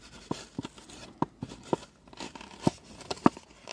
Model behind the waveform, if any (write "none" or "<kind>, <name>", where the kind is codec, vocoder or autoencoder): none